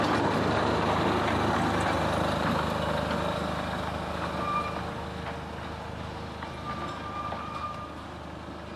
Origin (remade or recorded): recorded